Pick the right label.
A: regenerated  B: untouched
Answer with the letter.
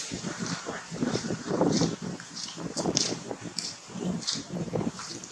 A